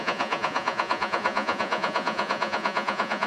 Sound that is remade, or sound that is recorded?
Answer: remade